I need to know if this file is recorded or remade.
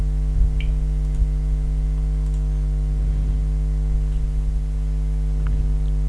recorded